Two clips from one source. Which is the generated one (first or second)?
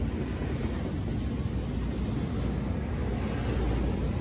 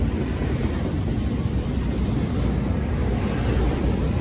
second